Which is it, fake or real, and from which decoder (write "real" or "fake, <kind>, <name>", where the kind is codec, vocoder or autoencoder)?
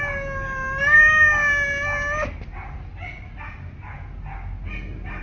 real